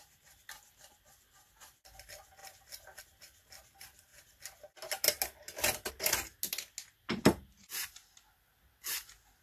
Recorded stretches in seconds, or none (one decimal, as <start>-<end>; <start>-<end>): 0.0-9.4